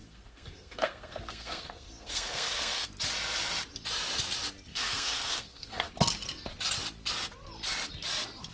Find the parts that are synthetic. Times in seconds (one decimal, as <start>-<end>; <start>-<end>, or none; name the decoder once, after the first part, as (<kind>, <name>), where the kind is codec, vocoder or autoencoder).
0.0-2.9 (codec, SNAC); 4.7-5.9